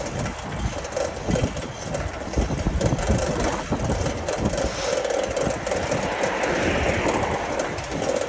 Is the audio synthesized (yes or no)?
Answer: no